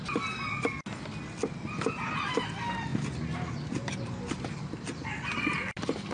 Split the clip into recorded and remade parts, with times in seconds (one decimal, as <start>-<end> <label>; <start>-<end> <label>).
0.0-6.1 recorded